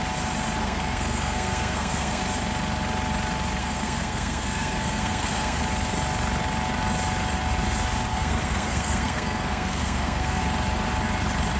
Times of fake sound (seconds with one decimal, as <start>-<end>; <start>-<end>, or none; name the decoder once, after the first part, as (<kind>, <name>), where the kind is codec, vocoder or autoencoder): 0.6-2.2 (codec, SNAC); 3.6-5.6; 8.1-10.4